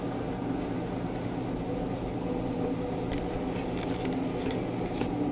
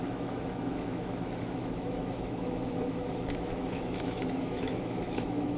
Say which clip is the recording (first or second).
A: first